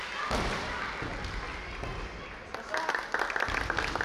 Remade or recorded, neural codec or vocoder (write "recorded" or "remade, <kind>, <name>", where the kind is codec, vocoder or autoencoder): recorded